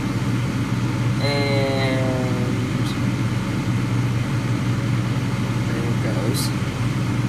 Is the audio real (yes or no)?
yes